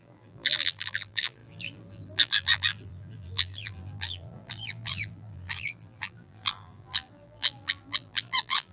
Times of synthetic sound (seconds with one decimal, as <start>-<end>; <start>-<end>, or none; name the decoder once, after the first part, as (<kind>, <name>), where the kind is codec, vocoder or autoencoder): 0.0-8.7 (vocoder, BigVGAN v2)